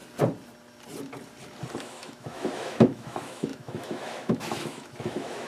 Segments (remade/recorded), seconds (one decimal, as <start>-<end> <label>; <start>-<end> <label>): 0.0-1.8 recorded; 1.8-5.5 remade